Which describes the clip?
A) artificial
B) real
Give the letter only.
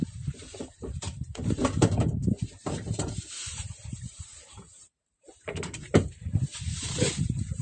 A